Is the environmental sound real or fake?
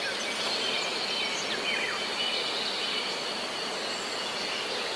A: real